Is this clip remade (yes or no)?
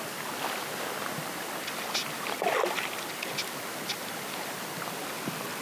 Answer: no